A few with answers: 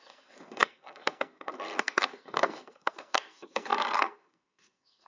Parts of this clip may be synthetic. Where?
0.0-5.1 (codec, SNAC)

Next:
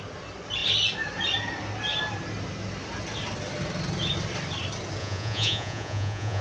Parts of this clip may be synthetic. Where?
5.0-6.4 (vocoder, Vocos)

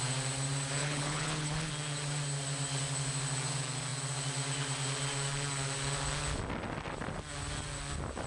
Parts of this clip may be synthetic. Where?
0.8-1.7 (codec, HILCodec)